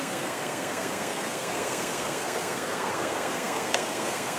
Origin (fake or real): fake